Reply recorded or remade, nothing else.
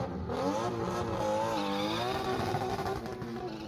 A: recorded